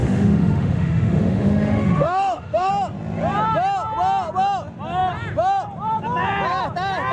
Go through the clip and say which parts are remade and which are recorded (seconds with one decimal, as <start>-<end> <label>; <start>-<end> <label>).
0.0-2.7 remade; 2.7-7.1 recorded